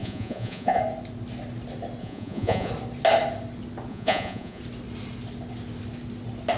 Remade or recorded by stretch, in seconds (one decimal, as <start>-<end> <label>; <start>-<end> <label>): 0.0-0.8 remade; 0.8-2.0 recorded; 2.0-2.7 remade; 2.7-3.9 recorded; 3.9-4.6 remade; 4.6-6.6 recorded

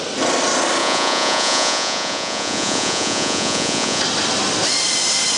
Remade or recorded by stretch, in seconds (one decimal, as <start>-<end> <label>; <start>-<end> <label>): 0.0-0.8 recorded; 0.8-4.0 remade; 4.0-5.4 recorded

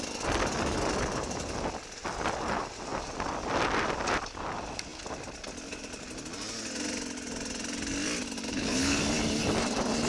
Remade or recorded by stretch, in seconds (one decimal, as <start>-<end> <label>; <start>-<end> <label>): 0.0-8.5 recorded; 8.5-9.0 remade; 9.0-10.1 recorded

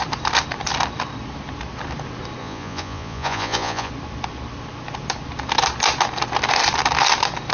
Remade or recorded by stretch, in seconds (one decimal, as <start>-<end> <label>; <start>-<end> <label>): 0.0-2.4 recorded; 2.4-3.9 remade; 3.9-7.5 recorded